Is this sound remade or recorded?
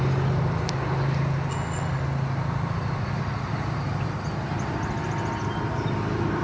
recorded